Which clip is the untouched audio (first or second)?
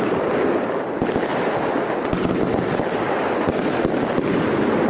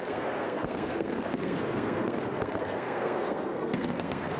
first